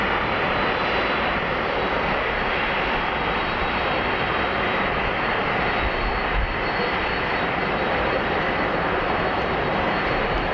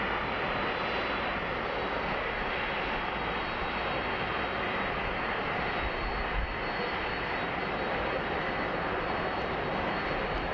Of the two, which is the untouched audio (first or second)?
second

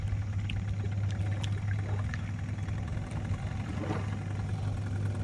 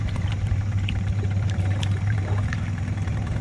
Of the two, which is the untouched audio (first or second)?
first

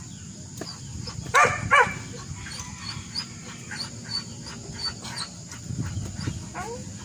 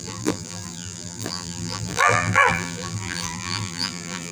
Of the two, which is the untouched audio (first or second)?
first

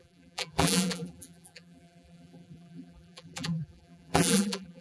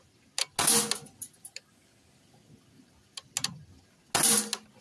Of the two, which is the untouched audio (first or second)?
second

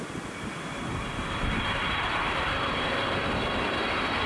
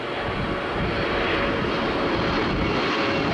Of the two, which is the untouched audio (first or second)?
second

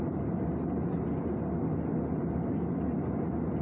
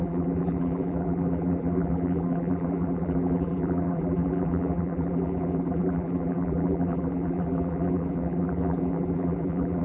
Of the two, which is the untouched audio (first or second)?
first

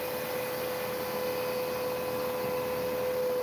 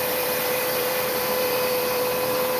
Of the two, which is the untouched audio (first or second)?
first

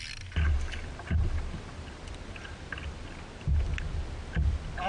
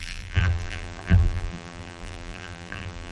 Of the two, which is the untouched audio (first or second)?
first